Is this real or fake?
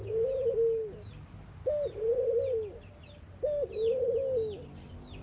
real